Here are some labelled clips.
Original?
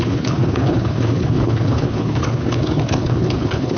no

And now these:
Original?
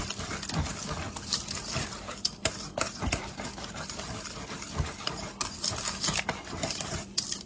yes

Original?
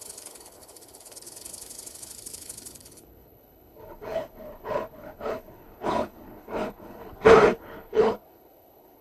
no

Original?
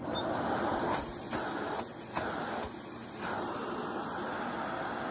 yes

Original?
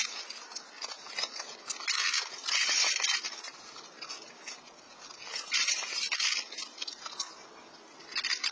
yes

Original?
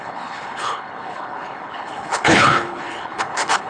no